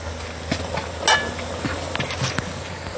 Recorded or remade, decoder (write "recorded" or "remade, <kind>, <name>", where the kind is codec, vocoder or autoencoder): recorded